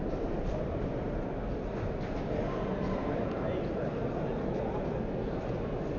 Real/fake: real